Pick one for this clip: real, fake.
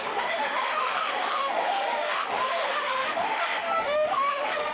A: fake